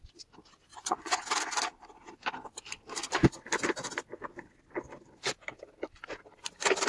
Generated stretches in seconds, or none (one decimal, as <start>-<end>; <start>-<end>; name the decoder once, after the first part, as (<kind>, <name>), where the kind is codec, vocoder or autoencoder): 0.7-1.2 (vocoder, Vocos)